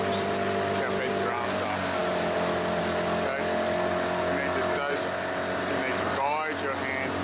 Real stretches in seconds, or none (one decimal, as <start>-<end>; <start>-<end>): 0.0-7.2

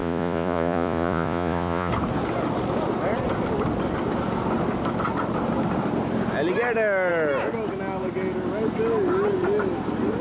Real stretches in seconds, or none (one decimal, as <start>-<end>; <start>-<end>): 1.9-10.2

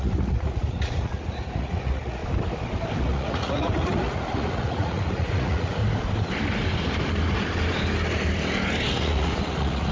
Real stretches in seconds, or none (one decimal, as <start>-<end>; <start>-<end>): 2.2-3.0; 5.8-8.9

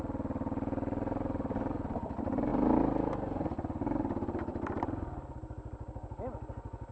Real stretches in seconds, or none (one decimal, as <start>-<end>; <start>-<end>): 0.0-6.9